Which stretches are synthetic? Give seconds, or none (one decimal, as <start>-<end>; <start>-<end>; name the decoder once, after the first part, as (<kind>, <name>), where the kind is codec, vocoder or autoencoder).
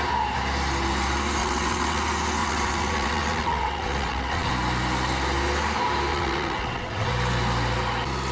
1.4-2.0 (vocoder, WaveNeXt); 2.4-4.5; 6.1-7.1